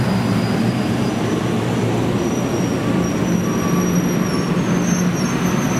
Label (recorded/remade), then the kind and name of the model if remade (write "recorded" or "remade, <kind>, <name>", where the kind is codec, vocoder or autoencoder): recorded